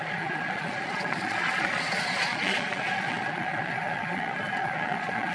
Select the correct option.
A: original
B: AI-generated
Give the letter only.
B